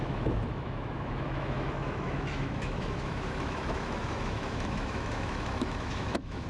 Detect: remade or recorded remade